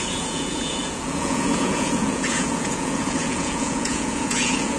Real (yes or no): no